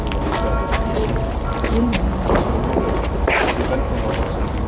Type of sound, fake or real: real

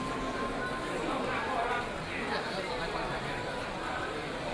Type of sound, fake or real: real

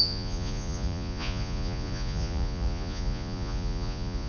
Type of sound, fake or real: fake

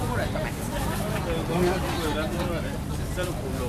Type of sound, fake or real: real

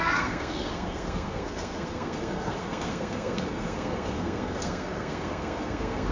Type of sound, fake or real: fake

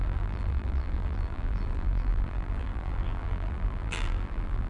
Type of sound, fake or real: fake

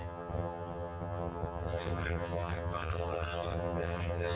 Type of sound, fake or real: fake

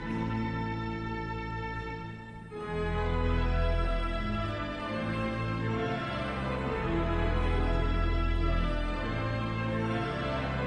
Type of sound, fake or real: real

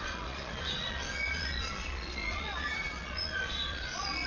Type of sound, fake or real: fake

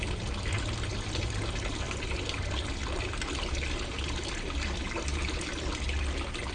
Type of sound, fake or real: real